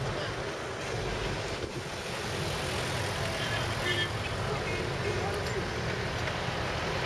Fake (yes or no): no